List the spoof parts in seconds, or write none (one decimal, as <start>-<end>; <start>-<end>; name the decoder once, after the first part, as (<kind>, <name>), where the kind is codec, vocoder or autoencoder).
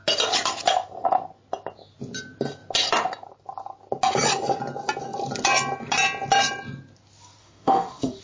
7.4-8.2 (autoencoder, DAC-VAE)